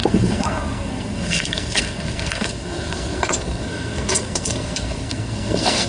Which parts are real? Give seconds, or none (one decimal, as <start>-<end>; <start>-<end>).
none